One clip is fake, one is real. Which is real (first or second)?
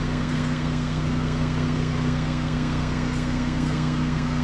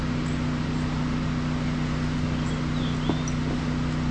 second